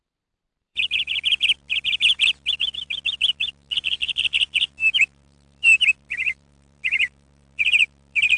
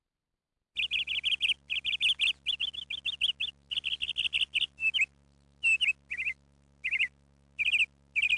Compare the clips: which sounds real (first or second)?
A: second